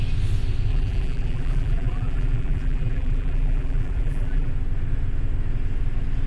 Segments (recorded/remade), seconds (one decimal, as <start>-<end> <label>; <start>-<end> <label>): 0.0-0.7 recorded; 0.7-4.5 remade; 4.5-6.3 recorded